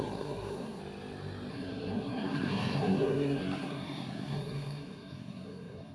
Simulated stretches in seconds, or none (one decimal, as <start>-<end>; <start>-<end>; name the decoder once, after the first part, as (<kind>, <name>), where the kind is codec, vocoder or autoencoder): 0.0-0.8 (codec, SNAC); 1.5-5.9